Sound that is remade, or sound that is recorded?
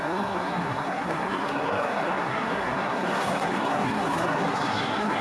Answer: remade